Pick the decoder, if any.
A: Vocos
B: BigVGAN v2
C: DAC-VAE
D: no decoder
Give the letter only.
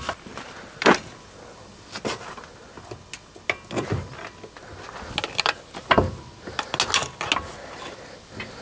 D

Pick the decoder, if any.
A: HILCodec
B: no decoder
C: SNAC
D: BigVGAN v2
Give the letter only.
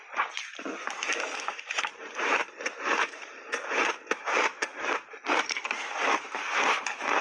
D